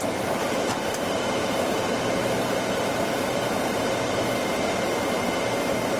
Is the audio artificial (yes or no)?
yes